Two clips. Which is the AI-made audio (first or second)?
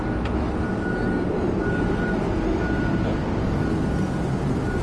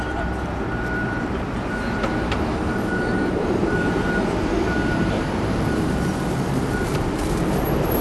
second